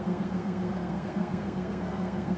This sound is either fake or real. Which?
fake